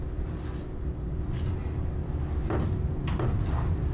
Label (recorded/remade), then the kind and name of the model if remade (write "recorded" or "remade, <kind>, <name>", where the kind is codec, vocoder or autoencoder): recorded